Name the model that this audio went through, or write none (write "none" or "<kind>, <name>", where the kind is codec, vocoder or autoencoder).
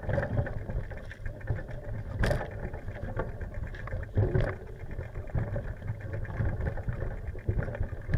none